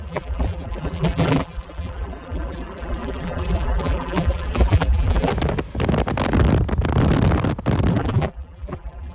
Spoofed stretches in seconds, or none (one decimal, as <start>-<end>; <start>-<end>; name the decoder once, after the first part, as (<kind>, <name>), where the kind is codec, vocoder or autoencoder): 0.0-5.3 (vocoder, BigVGAN v2); 7.9-9.1